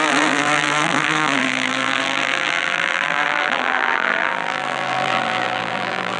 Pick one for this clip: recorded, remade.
remade